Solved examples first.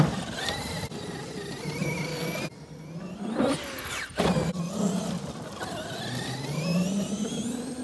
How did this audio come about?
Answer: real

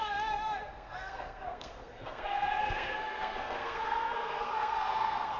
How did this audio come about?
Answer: fake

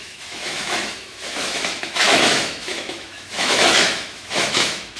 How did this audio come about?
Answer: fake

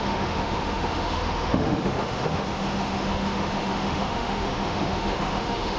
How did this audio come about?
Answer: fake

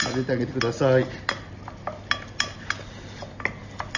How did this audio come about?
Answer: real